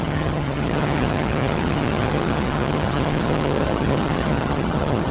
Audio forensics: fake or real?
fake